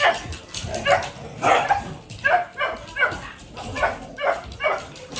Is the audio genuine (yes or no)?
yes